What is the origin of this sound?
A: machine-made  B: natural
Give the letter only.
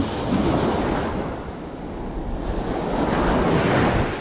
B